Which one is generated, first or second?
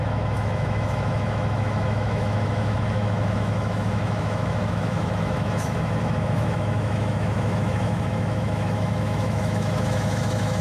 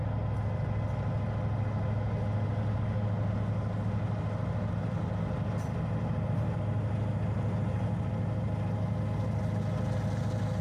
first